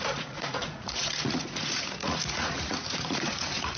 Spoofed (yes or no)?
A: yes